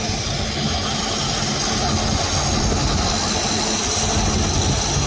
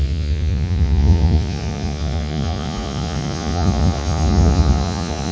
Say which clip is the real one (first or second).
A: first